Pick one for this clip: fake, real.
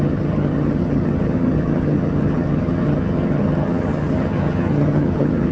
fake